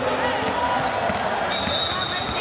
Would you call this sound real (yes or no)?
yes